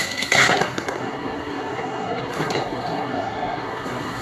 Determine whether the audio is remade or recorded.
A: remade